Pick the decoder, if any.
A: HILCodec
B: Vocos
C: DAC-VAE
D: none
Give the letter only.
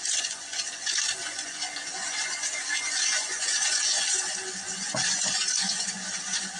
B